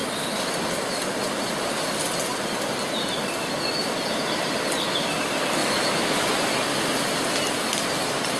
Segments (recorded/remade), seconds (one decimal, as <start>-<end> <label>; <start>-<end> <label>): 0.0-5.6 recorded; 5.6-6.3 remade; 6.3-8.4 recorded